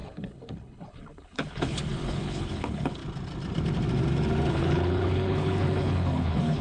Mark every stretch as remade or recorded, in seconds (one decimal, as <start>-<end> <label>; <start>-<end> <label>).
0.0-3.0 remade; 3.0-4.5 recorded; 4.5-6.6 remade

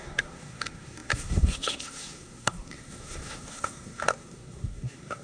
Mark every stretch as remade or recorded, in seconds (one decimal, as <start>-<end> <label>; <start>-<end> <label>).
0.0-5.2 remade

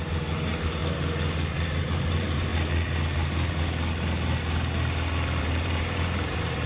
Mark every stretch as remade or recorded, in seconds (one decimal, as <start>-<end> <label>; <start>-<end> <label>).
0.0-0.8 remade; 0.8-1.8 recorded; 1.8-2.5 remade; 2.5-5.4 recorded; 5.4-6.7 remade

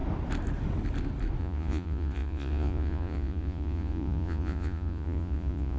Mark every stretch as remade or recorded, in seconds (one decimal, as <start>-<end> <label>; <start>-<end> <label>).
0.0-1.4 recorded; 1.4-5.8 remade

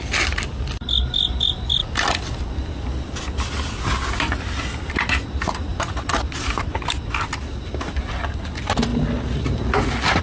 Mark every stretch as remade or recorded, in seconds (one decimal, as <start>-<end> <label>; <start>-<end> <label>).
0.0-1.8 recorded; 1.8-3.5 remade; 3.5-5.7 recorded; 5.7-8.5 remade; 8.5-10.2 recorded

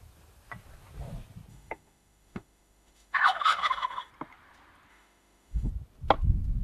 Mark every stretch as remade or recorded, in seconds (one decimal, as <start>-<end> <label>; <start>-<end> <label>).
0.0-1.5 recorded; 1.5-4.1 remade; 4.1-4.9 recorded; 4.9-5.7 remade; 5.7-6.6 recorded

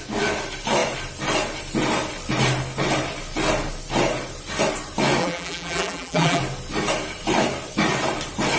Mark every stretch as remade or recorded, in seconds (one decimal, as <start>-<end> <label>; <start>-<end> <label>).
0.0-5.2 recorded; 5.2-6.4 remade; 6.4-8.6 recorded

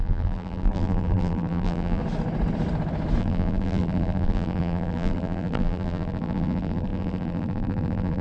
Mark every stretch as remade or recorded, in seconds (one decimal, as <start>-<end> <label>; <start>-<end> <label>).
0.0-2.0 remade; 2.0-3.2 recorded; 3.2-8.2 remade